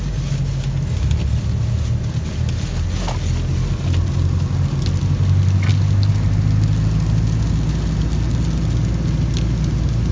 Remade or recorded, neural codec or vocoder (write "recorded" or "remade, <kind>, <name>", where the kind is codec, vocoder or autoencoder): recorded